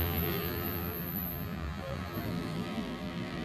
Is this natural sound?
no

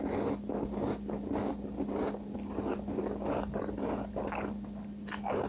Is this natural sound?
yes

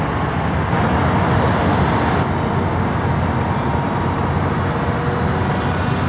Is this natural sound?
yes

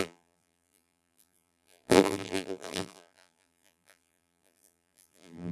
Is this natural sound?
no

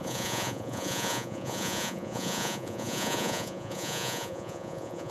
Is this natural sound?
no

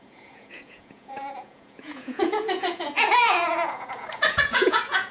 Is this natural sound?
no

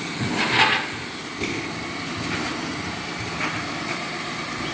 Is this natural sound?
no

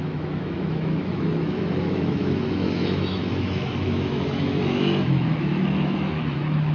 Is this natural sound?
no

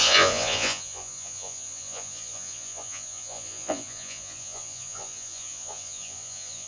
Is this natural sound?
no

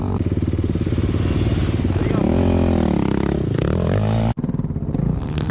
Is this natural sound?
yes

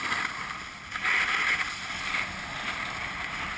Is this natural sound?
yes